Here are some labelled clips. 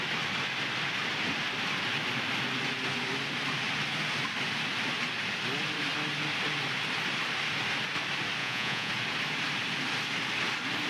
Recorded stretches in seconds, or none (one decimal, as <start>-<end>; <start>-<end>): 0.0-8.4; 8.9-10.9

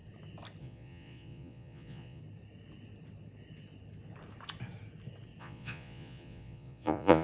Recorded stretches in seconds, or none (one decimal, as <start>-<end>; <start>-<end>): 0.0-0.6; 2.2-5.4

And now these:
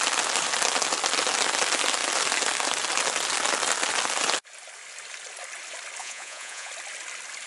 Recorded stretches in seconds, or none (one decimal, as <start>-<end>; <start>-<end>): 0.0-6.0; 6.7-7.5

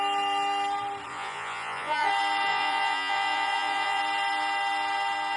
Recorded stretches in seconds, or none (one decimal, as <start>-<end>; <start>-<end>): 0.0-1.1; 2.1-2.5; 4.0-5.4